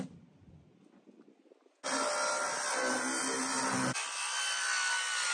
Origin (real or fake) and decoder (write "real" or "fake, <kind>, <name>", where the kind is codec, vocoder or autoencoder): real